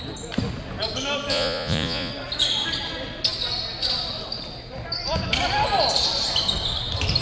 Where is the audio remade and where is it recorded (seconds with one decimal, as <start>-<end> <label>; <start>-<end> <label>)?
0.0-1.3 recorded; 1.3-2.1 remade; 2.1-7.2 recorded